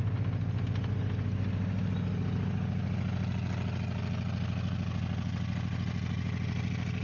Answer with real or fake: real